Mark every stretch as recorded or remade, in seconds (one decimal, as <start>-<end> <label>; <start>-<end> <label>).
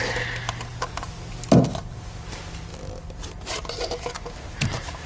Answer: 0.0-5.1 recorded